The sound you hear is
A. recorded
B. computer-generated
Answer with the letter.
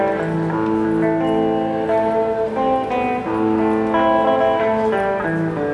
A